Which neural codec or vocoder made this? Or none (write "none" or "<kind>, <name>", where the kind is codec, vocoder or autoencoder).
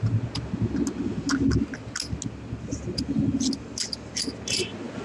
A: none